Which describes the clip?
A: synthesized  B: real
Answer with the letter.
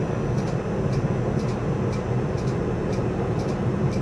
A